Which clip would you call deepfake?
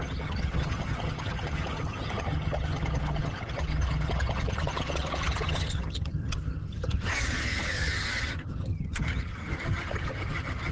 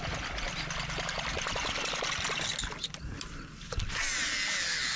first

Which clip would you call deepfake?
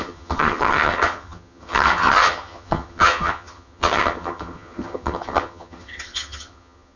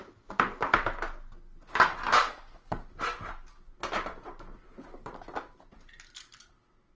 first